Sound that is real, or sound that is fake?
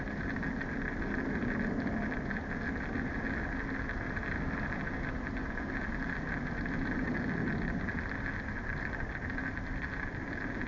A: real